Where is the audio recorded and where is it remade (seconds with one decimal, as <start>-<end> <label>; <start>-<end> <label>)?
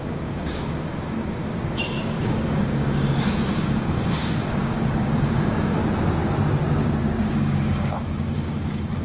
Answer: 0.0-5.8 remade; 5.8-7.2 recorded; 7.2-9.0 remade